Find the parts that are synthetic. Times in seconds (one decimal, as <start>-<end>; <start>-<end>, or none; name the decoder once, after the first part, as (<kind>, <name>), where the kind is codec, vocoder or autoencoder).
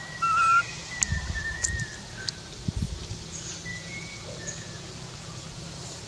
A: 3.7-5.6 (vocoder, Vocos)